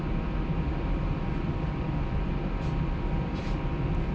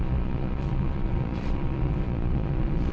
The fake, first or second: second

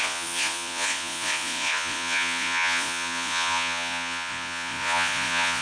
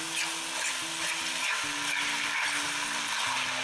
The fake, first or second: first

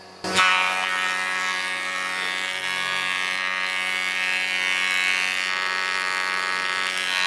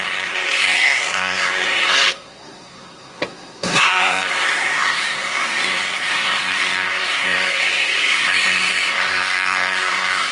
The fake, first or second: second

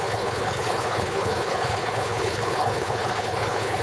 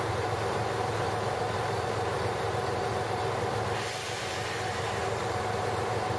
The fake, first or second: first